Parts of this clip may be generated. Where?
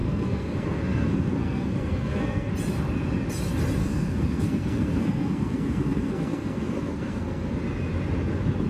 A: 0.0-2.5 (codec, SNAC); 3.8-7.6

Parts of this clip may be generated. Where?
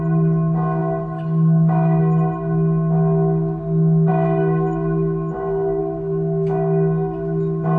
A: 0.8-2.0 (autoencoder, DAC-VAE); 4.1-5.8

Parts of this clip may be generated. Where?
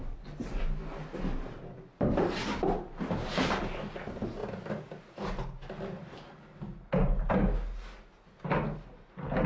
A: none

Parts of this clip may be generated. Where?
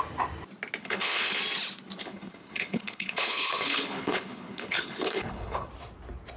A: 0.8-1.4 (codec, HILCodec); 2.0-5.7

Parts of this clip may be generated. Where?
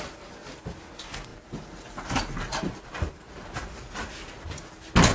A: 1.3-4.4 (vocoder, BigVGAN v2)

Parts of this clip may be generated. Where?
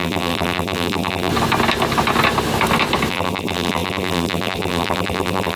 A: 0.0-1.3 (vocoder, BigVGAN v2); 3.1-5.6